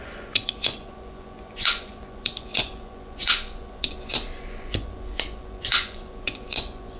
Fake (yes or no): yes